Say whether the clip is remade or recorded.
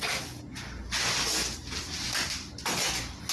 recorded